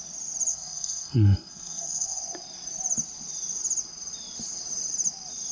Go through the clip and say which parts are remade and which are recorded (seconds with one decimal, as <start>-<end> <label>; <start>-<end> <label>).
0.0-0.5 recorded; 0.5-2.2 remade; 2.2-5.5 recorded